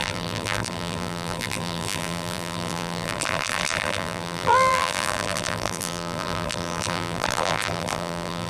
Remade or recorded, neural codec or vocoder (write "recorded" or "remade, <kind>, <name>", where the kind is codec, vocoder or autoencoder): remade, vocoder, BigVGAN v2